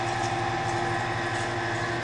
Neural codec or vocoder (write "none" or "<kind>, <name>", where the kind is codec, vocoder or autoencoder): none